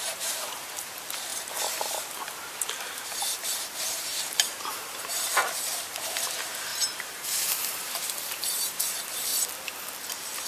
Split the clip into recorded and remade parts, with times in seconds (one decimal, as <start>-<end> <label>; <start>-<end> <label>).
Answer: 0.0-9.3 remade; 9.3-10.1 recorded; 10.1-10.5 remade